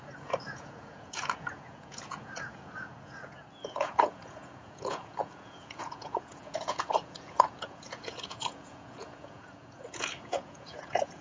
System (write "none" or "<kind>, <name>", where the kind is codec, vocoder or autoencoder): vocoder, Vocos